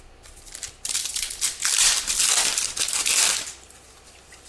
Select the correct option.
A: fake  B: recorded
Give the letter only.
B